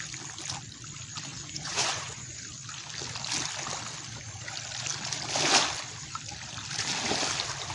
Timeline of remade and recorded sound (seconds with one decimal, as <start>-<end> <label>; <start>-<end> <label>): 0.0-1.3 recorded; 1.3-2.4 remade; 2.4-7.7 recorded